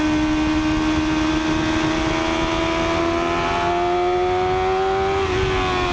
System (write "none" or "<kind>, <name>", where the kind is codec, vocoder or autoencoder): none